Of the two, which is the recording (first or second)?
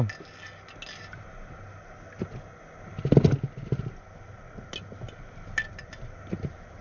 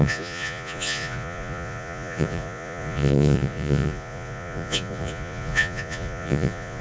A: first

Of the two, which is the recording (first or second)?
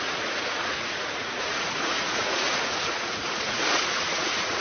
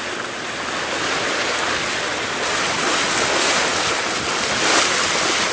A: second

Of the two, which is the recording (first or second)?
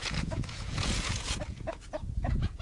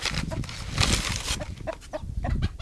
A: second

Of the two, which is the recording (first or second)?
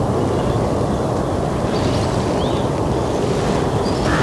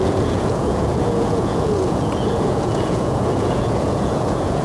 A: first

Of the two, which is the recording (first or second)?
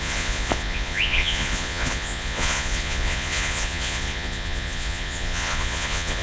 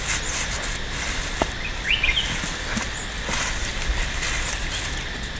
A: second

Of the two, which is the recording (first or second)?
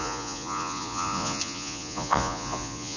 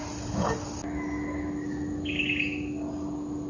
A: second